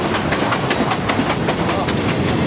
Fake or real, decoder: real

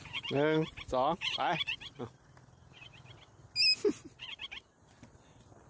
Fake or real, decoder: real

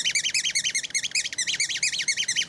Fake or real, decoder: fake, vocoder, BigVGAN v2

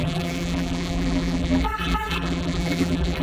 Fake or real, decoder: fake, vocoder, BigVGAN v2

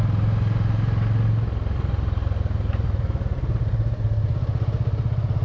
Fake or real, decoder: real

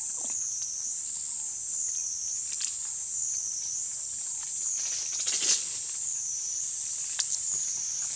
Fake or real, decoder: real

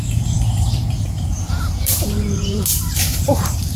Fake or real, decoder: fake, vocoder, BigVGAN v2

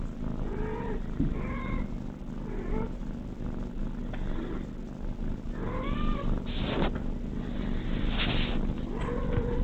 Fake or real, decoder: real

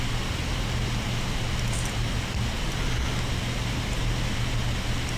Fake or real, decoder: real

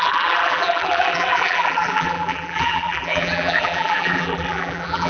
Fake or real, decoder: fake, vocoder, BigVGAN v2